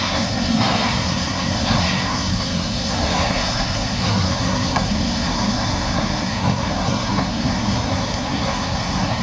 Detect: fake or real fake